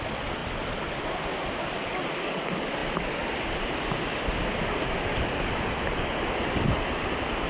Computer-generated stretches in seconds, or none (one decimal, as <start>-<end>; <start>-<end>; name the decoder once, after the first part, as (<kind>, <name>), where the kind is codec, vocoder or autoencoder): none